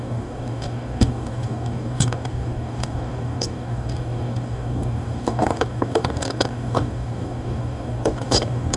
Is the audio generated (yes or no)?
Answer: yes